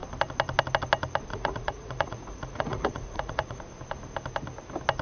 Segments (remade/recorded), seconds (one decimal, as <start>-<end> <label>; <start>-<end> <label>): 0.0-1.3 recorded; 1.3-3.6 remade; 3.6-5.0 recorded